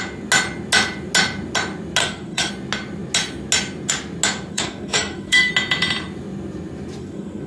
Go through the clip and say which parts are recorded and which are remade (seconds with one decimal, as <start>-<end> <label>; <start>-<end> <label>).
0.0-2.0 recorded; 2.0-2.5 remade; 2.5-4.5 recorded; 4.5-5.5 remade; 5.5-7.0 recorded; 7.0-7.5 remade